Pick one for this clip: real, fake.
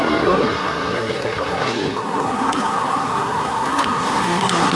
fake